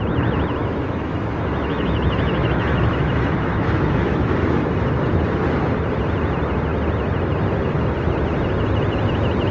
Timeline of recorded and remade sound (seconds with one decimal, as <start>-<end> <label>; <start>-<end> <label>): 0.0-0.6 recorded; 0.6-4.7 remade; 4.7-9.5 recorded